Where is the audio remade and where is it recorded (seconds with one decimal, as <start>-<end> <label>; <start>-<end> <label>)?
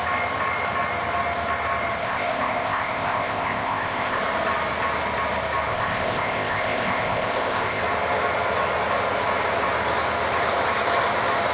0.0-2.0 recorded; 2.0-4.2 remade; 4.2-5.7 recorded; 5.7-7.8 remade; 7.8-11.5 recorded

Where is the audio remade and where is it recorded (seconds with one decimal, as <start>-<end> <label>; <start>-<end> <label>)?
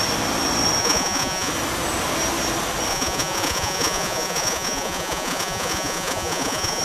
0.0-0.8 recorded; 0.8-1.5 remade; 1.5-2.9 recorded; 2.9-6.8 remade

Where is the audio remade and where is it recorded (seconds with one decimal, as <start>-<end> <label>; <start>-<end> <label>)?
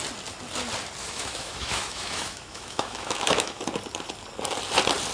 0.0-1.0 recorded; 1.0-3.6 remade; 3.6-5.1 recorded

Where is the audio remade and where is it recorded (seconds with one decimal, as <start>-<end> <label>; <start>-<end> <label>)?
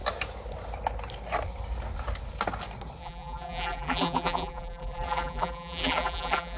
0.0-3.0 recorded; 3.0-6.6 remade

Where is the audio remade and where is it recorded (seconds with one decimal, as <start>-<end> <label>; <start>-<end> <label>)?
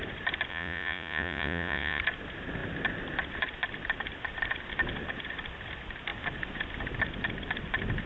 0.0-0.5 recorded; 0.5-2.0 remade; 2.0-8.1 recorded